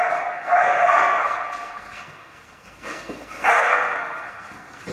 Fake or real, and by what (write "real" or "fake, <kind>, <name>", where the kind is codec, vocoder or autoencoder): fake, codec, SNAC